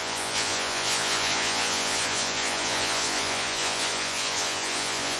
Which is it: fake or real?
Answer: fake